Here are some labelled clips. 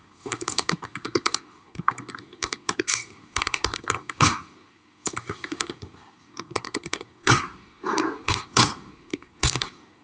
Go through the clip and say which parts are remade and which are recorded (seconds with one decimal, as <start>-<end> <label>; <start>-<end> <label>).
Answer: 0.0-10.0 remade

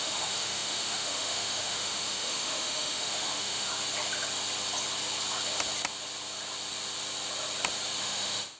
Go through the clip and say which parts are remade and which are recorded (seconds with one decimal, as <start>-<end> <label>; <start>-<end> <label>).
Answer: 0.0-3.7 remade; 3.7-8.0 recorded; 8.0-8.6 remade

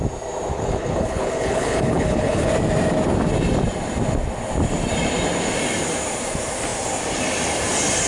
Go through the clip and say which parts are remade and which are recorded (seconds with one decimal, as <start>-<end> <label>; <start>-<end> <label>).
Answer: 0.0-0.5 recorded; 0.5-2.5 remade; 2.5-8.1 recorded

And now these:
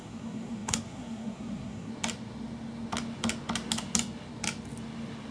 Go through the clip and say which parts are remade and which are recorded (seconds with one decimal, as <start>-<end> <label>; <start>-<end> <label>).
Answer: 0.0-1.9 remade; 1.9-5.3 recorded